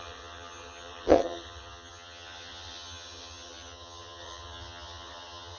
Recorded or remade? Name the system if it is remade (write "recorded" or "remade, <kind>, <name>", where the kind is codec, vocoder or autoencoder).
remade, vocoder, HiFi-GAN